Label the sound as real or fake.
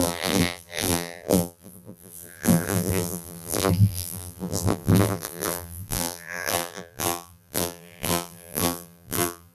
fake